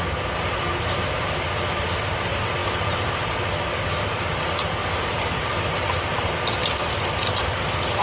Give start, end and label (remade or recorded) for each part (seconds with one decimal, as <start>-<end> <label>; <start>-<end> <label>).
0.0-8.0 recorded